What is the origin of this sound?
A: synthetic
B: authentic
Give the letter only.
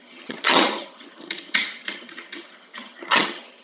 A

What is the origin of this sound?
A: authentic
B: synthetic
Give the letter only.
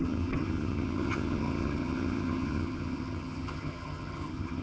B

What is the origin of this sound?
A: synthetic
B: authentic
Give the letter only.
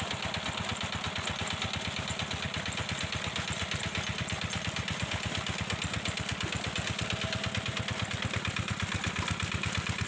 B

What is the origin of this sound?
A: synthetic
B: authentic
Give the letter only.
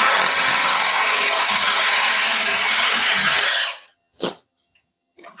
A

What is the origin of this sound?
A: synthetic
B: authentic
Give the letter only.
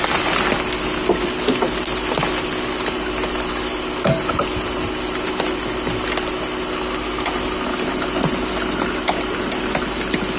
B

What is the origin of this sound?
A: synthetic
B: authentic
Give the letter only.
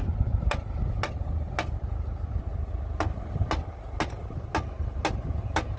B